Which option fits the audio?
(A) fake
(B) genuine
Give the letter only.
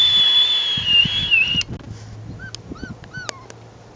B